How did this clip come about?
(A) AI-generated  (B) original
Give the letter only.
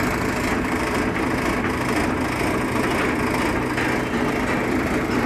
B